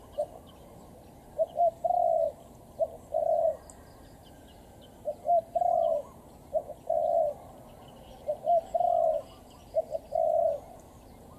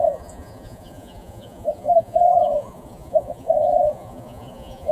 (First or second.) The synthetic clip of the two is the second